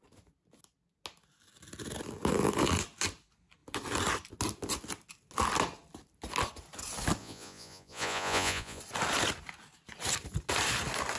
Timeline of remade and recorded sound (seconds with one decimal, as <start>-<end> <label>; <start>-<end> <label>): 0.0-7.2 recorded; 7.2-8.8 remade; 8.8-11.2 recorded